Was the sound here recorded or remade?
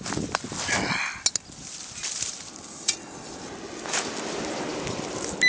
recorded